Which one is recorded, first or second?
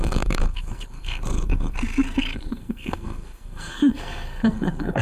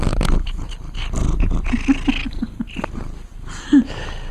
second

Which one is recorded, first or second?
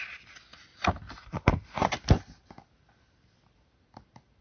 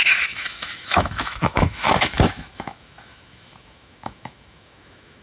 first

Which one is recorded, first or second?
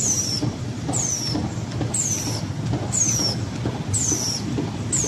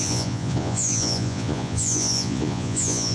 first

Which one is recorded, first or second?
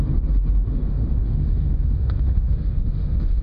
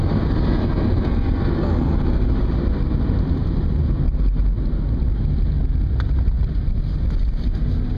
second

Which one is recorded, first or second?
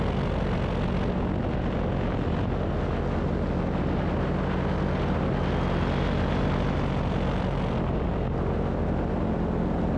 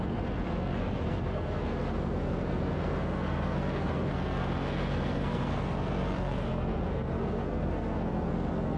first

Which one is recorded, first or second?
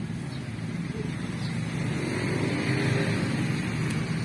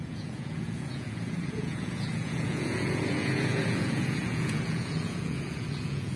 first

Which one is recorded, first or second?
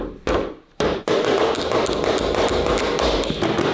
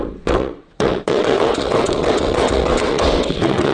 first